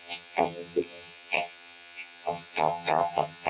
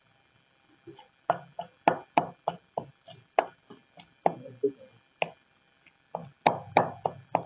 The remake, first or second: first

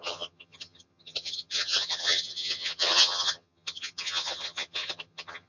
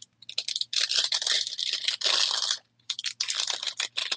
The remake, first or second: first